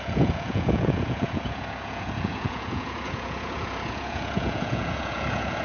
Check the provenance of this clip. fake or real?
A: fake